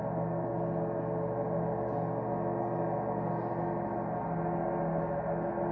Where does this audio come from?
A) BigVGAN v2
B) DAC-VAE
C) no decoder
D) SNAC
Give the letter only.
C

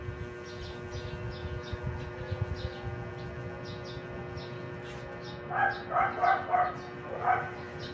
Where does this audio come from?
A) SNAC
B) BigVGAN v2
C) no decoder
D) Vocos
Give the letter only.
C